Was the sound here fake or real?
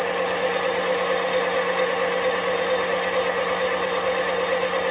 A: real